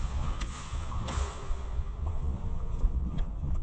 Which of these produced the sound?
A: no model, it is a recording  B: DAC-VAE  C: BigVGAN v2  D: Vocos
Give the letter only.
D